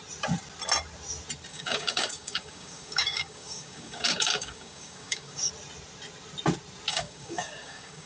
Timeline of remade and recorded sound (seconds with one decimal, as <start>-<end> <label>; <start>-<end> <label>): 0.0-1.5 recorded; 1.5-5.5 remade; 5.5-6.9 recorded; 6.9-8.1 remade